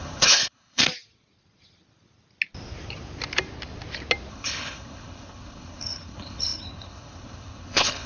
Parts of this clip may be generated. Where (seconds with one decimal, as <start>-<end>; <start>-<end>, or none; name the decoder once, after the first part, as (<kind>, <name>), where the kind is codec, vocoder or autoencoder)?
0.0-0.8 (codec, HILCodec); 4.3-8.1

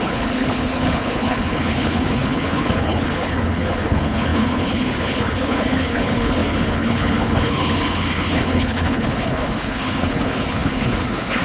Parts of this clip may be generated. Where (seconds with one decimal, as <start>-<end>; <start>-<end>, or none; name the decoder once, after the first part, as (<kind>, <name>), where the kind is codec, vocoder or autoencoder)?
0.0-11.4 (codec, HILCodec)